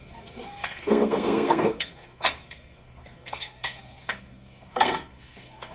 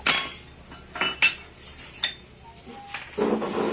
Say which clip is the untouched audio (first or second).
second